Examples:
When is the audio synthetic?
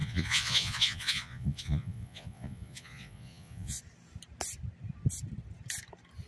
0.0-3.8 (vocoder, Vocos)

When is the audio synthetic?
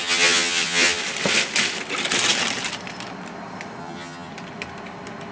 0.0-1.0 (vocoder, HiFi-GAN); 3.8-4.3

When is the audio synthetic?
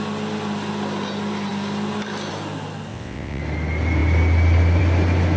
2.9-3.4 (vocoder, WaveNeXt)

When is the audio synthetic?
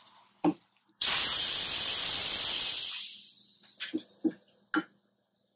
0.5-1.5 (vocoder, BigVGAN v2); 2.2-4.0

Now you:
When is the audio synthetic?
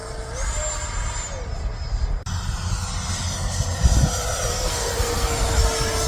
4.5-5.6 (codec, SNAC)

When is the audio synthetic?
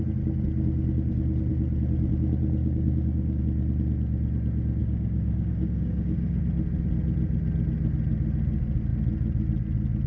2.6-3.4 (codec, DAC); 4.8-6.4